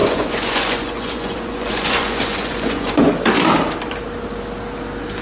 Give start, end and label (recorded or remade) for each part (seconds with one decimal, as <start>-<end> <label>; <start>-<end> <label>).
0.0-3.1 remade; 3.1-5.2 recorded